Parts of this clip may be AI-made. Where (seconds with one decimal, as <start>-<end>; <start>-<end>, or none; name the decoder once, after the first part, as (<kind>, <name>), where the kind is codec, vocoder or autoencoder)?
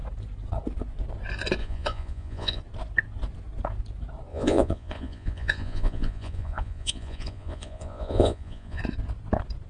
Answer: 1.6-2.6 (vocoder, Vocos); 4.3-8.8